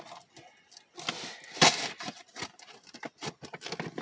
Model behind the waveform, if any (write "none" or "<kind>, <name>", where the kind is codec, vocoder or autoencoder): none